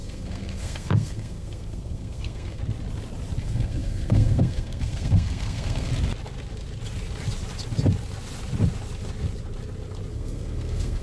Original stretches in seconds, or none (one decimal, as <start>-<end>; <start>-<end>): 2.6-3.4; 5.9-10.1